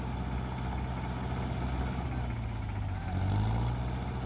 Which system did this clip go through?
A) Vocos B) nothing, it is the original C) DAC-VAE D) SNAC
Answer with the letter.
B